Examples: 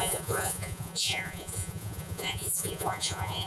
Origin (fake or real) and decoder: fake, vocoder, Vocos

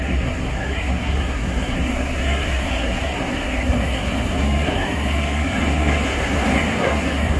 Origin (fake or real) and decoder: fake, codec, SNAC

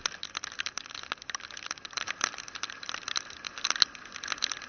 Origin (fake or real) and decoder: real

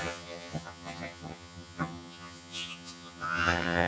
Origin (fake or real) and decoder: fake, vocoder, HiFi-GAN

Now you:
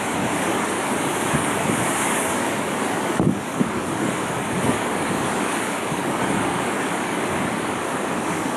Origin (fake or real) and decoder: fake, codec, DAC